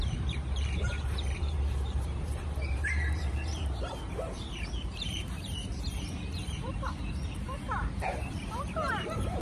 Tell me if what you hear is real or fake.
fake